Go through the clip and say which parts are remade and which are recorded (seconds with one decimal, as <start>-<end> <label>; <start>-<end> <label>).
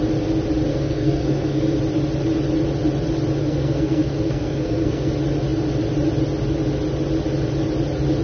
0.0-0.7 recorded; 0.7-1.8 remade; 1.8-3.4 recorded; 3.4-5.1 remade; 5.1-8.2 recorded